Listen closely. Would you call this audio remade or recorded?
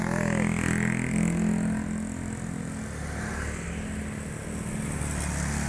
recorded